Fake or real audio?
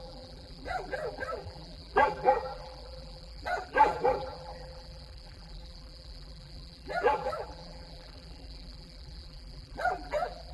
fake